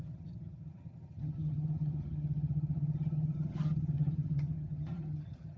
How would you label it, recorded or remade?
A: remade